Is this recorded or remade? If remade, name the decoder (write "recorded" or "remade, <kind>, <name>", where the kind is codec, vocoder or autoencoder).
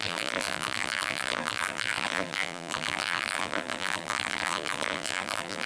remade, vocoder, BigVGAN v2